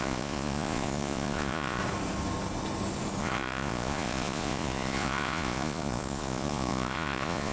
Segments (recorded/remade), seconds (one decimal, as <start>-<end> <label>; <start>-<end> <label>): 0.0-1.8 remade; 1.8-3.2 recorded; 3.2-7.5 remade